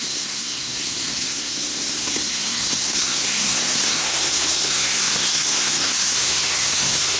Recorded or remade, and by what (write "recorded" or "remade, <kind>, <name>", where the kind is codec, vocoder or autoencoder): remade, codec, SNAC